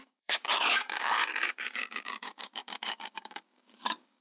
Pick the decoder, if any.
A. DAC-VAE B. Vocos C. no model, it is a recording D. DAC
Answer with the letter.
D